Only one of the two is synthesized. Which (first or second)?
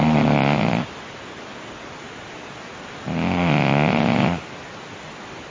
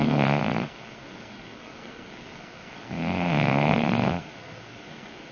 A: second